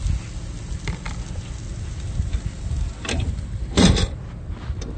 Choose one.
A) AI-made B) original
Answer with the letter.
B